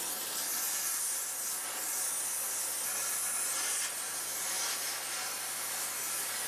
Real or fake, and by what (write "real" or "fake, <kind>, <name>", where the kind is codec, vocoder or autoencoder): real